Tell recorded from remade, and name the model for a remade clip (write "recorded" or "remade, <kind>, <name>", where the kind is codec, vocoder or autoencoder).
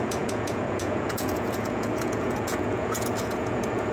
remade, vocoder, Vocos